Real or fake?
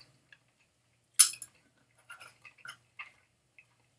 real